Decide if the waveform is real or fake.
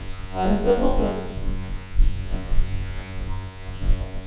fake